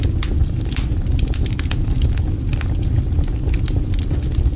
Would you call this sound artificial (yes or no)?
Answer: no